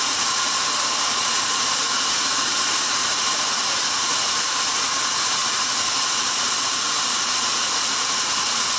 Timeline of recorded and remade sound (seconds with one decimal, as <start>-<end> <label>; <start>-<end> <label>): 0.0-8.8 remade

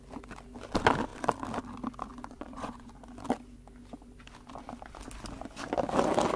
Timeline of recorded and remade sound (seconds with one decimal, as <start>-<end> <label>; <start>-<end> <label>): 0.0-2.1 recorded; 2.1-2.9 remade; 2.9-6.4 recorded

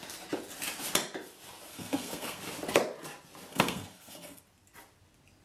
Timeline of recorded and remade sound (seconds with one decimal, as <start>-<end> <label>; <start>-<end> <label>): 0.0-1.7 recorded; 1.7-2.4 remade; 2.4-3.5 recorded; 3.5-4.4 remade; 4.4-5.4 recorded

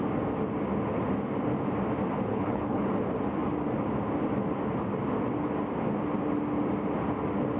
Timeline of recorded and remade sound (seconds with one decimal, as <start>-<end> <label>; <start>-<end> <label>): 0.0-2.3 recorded; 2.3-2.8 remade; 2.8-7.6 recorded

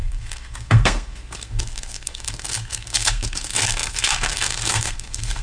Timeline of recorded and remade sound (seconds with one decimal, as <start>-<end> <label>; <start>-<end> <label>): 0.0-5.4 remade